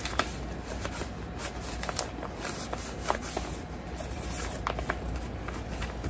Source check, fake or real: real